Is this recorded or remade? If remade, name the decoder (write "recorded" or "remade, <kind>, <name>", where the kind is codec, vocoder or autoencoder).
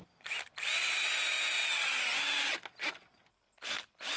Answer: recorded